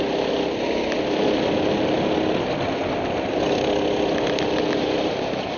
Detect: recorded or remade recorded